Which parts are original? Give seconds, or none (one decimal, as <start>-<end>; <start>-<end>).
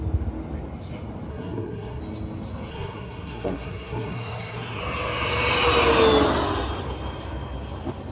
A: 0.0-1.3; 2.0-2.7; 4.8-8.1